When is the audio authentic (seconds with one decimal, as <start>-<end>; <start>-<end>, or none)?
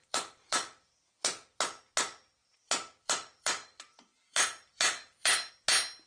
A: 1.6-2.4; 5.5-6.1